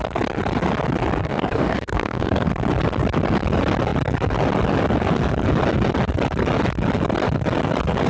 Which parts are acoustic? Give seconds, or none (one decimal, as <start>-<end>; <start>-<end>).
0.0-1.2; 2.5-8.1